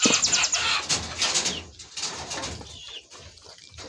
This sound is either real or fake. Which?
real